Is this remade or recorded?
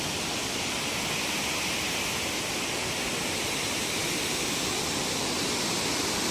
recorded